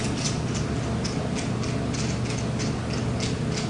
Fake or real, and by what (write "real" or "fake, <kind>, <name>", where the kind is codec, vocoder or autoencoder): real